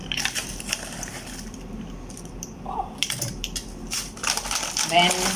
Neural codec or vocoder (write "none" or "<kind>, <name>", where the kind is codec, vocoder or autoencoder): vocoder, BigVGAN v2